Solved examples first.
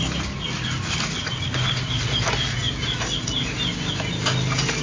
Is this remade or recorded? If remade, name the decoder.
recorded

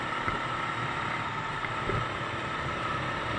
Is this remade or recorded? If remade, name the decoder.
recorded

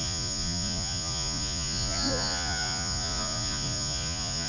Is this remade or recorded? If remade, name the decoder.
remade, vocoder, Vocos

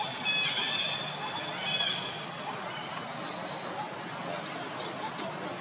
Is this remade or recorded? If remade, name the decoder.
recorded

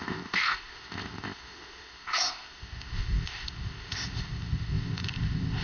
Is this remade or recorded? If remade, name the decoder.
remade, codec, ZipCodec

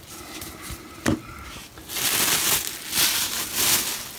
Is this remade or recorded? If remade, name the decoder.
recorded